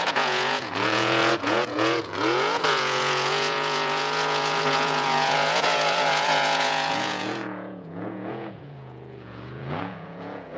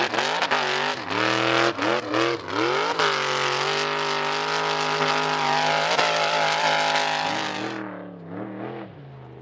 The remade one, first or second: first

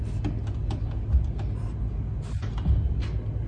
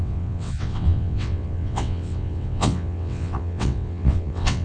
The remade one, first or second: second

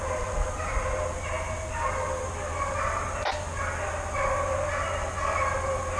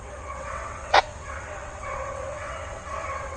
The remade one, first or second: second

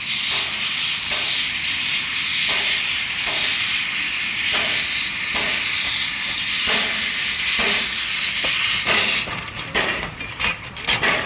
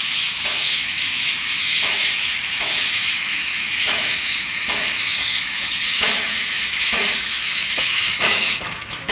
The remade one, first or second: second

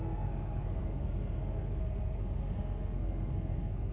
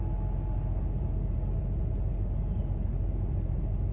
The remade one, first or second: first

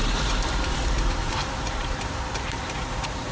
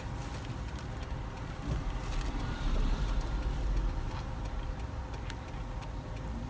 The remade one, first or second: first